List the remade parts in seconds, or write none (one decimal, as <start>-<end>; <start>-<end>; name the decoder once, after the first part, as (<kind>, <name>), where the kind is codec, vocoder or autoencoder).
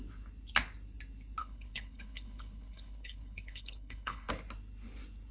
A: 1.4-4.3 (codec, HILCodec)